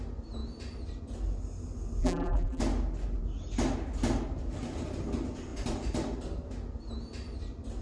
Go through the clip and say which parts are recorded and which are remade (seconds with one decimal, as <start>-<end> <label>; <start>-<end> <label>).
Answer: 0.0-2.0 recorded; 2.0-2.6 remade; 2.6-7.8 recorded